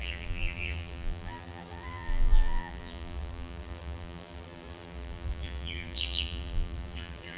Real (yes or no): no